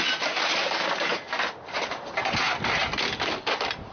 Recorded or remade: recorded